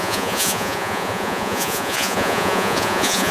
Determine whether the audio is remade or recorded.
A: remade